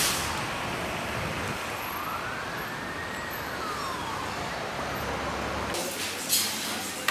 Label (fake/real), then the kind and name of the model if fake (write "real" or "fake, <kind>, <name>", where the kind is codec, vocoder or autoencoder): real